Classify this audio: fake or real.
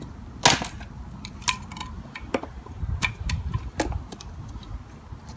real